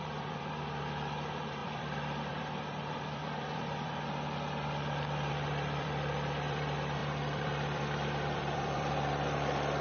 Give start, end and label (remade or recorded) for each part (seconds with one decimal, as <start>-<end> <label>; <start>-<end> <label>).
0.0-9.8 remade

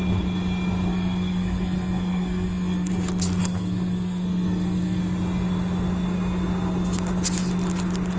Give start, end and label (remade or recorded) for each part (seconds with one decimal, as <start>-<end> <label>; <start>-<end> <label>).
0.0-0.9 recorded; 0.9-2.9 remade; 2.9-3.4 recorded; 3.4-5.0 remade; 5.0-8.2 recorded

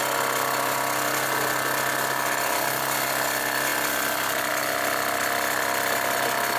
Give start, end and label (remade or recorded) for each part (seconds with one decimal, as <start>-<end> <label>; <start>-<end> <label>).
0.0-6.6 recorded

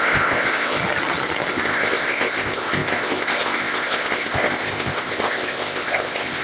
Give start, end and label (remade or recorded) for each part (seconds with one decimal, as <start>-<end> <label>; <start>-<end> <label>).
0.0-0.8 remade; 0.8-1.5 recorded; 1.5-6.4 remade

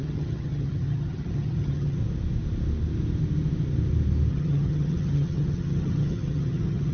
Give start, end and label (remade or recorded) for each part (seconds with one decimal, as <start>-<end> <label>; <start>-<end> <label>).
0.0-2.0 remade; 2.0-4.3 recorded; 4.3-6.9 remade

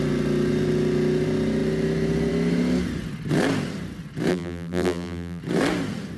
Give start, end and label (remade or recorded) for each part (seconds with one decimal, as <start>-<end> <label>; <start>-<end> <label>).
0.0-4.3 recorded; 4.3-5.4 remade; 5.4-6.2 recorded